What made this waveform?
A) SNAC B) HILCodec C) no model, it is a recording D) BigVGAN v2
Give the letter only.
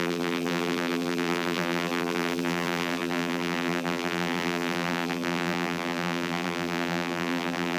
D